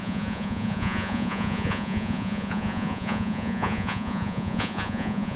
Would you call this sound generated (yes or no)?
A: yes